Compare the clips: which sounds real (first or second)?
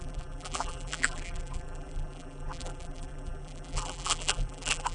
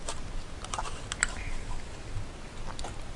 second